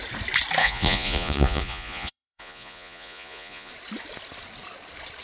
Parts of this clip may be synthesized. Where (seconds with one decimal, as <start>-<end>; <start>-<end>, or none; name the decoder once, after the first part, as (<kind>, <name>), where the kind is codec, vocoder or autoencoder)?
0.6-3.7 (vocoder, Vocos)